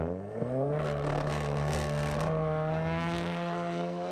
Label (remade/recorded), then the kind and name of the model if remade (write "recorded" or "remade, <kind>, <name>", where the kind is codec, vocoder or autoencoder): remade, codec, SNAC